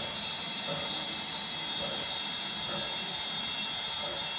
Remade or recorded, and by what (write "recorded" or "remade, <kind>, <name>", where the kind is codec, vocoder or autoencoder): recorded